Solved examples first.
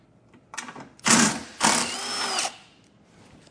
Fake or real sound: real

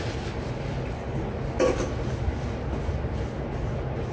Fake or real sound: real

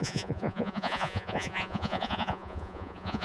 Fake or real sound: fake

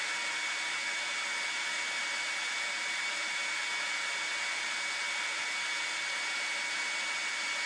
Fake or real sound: real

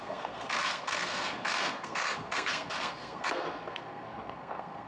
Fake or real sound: fake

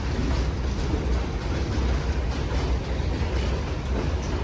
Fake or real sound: real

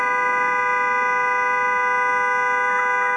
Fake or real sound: real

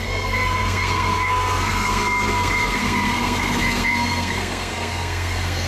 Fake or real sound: fake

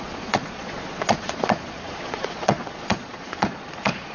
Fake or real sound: fake